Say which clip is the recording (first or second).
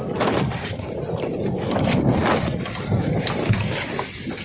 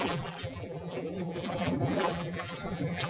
first